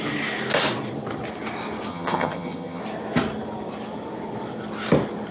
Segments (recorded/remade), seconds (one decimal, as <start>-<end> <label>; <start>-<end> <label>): 0.0-1.9 recorded; 1.9-2.8 remade; 2.8-5.3 recorded